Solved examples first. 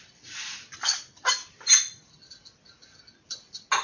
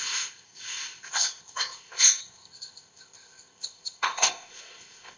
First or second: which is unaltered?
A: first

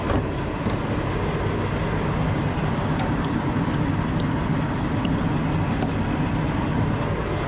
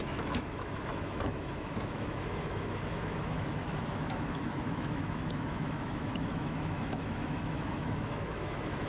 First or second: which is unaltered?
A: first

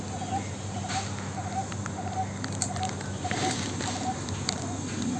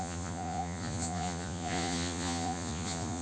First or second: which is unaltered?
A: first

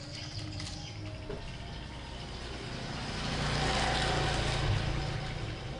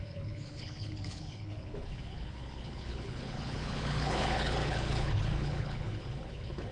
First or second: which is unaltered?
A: first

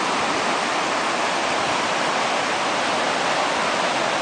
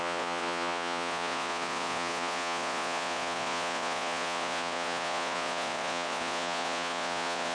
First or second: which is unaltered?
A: first